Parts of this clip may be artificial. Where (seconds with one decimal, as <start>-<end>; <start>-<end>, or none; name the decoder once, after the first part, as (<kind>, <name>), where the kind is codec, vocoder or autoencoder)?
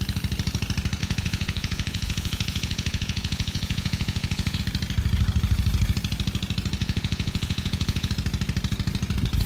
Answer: 1.0-4.6 (vocoder, Vocos); 6.8-8.1